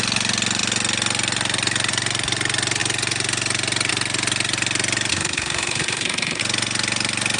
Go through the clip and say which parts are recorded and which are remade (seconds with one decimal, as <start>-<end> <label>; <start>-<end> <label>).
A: 0.0-5.1 recorded; 5.1-6.4 remade; 6.4-7.4 recorded